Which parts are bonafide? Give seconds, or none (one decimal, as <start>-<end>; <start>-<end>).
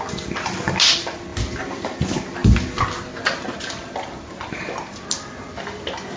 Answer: 0.0-6.2